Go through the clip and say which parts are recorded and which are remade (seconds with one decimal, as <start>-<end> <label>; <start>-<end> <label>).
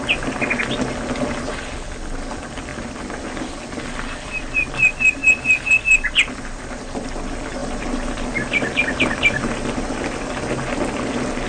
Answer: 0.0-5.2 recorded; 5.2-5.8 remade; 5.8-7.6 recorded; 7.6-10.8 remade; 10.8-11.5 recorded